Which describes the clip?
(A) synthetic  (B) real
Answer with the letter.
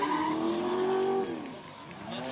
B